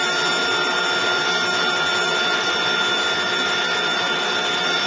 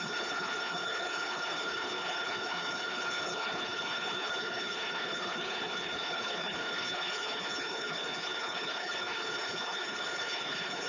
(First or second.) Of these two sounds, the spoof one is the second